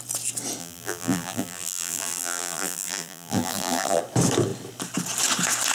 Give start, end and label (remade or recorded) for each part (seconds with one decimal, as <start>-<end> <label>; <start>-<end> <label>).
0.0-0.6 recorded; 0.6-4.0 remade; 4.0-5.7 recorded